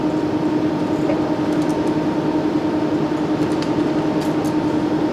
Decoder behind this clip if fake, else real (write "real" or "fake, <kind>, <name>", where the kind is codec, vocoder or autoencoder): real